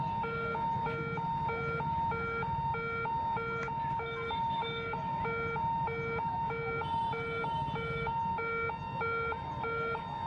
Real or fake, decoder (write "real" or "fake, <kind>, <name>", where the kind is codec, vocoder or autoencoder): real